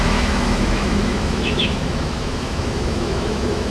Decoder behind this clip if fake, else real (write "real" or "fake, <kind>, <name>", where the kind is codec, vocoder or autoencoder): fake, autoencoder, DAC-VAE